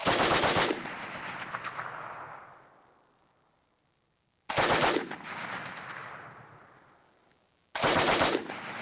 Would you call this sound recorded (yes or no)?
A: yes